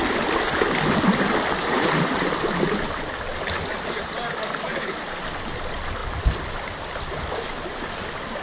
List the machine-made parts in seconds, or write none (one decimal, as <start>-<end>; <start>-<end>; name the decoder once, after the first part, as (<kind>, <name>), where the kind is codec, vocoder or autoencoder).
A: none